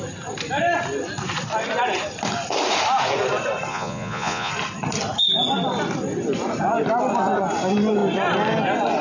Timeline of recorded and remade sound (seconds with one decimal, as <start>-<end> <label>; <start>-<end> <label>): 0.0-3.7 recorded; 3.7-4.5 remade; 4.5-9.0 recorded

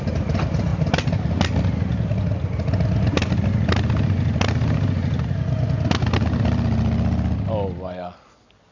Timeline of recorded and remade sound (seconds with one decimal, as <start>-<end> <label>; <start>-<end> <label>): 0.0-8.7 recorded

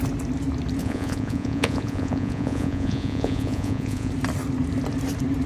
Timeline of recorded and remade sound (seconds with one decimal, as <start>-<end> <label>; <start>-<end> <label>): 0.0-0.8 recorded; 0.8-4.1 remade; 4.1-5.5 recorded

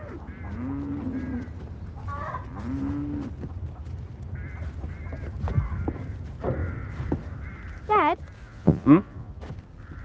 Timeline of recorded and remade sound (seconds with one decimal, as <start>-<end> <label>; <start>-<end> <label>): 0.0-8.4 recorded; 8.4-9.4 remade; 9.4-10.0 recorded

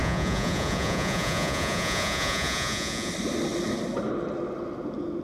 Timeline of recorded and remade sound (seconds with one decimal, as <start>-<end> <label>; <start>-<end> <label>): 0.0-3.1 remade; 3.1-5.2 recorded

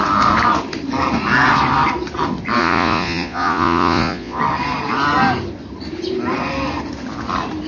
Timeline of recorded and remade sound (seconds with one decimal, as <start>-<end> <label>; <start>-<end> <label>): 0.0-2.6 recorded; 2.6-4.4 remade; 4.4-7.7 recorded